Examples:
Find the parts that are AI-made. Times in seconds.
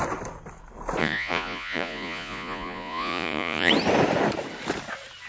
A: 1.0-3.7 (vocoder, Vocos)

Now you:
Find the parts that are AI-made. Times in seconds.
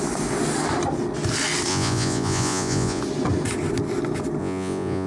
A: 1.7-3.0 (vocoder, Vocos); 4.4-5.1